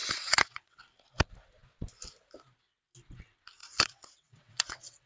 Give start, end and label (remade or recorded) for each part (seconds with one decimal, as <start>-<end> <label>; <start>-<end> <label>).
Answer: 0.0-0.8 remade; 0.8-3.6 recorded; 3.6-5.1 remade